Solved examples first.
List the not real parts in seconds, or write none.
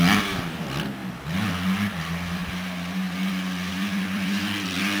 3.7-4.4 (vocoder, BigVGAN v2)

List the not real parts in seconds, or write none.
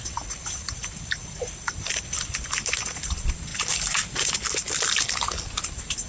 none